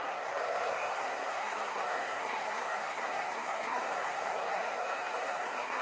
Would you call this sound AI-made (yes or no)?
yes